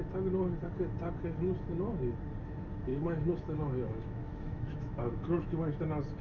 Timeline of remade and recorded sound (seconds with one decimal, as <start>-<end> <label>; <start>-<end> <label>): 0.0-2.9 recorded; 2.9-5.8 remade; 5.8-6.2 recorded